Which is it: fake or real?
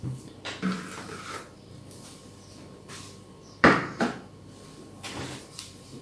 fake